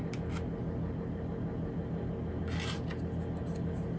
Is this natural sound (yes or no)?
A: yes